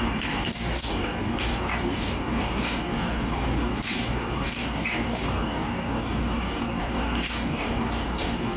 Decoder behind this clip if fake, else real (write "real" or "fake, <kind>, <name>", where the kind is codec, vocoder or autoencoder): fake, codec, DAC